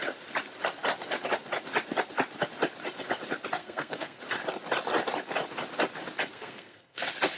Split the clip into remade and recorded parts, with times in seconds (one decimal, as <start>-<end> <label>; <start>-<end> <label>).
0.0-3.6 recorded; 3.6-4.2 remade; 4.2-6.3 recorded; 6.3-7.0 remade; 7.0-7.4 recorded